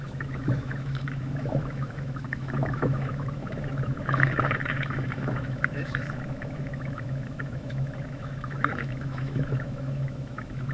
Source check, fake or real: fake